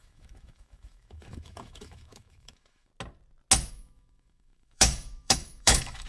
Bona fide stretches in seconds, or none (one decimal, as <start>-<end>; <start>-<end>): 2.9-3.7